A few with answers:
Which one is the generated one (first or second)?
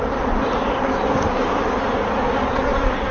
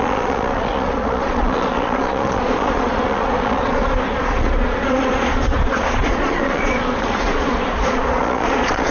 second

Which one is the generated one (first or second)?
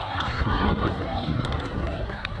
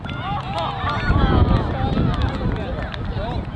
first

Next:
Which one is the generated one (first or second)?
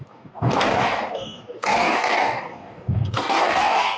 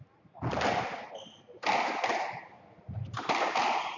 first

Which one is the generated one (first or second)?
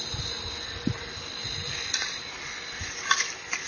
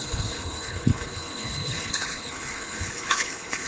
second